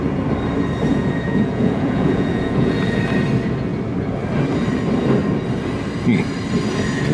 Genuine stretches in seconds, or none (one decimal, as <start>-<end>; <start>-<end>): 0.0-0.9; 3.0-7.1